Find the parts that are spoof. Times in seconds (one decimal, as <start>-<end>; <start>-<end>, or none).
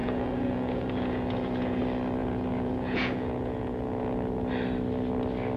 0.0-1.8; 2.2-4.5